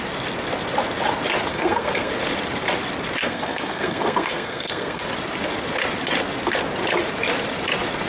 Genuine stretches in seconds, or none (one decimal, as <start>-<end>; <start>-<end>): 0.0-1.5; 2.1-3.2; 5.0-8.1